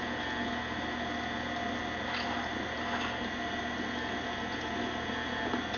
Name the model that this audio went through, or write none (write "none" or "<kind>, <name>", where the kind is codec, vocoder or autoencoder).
none